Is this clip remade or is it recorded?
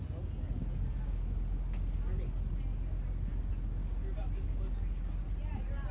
recorded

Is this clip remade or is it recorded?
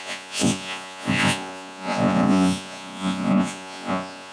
remade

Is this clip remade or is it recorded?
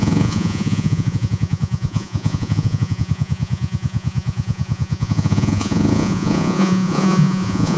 remade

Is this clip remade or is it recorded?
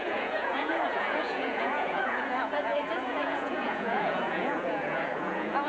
remade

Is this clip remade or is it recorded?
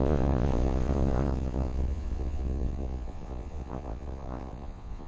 remade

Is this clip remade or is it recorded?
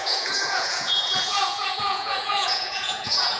remade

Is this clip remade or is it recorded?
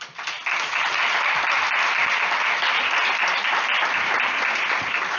recorded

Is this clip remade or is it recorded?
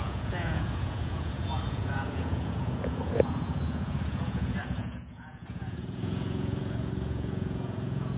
remade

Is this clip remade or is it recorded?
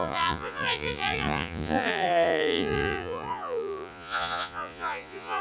remade